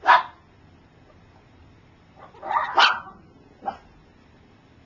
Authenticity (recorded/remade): recorded